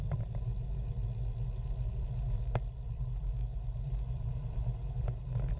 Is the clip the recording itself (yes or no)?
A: yes